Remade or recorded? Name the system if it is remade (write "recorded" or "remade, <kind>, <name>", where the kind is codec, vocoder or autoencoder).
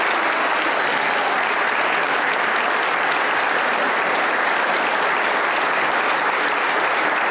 recorded